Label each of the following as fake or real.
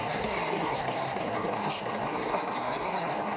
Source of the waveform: fake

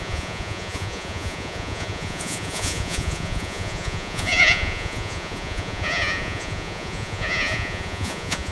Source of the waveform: fake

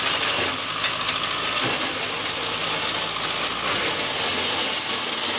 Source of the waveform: real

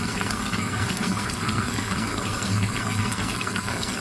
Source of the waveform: fake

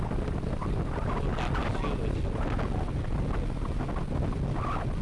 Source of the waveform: real